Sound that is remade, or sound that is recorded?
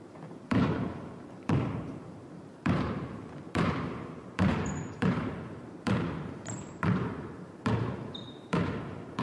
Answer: remade